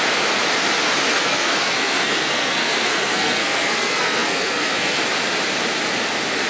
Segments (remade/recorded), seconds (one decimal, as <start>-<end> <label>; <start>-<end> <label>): 0.0-1.1 recorded; 1.1-5.0 remade; 5.0-6.5 recorded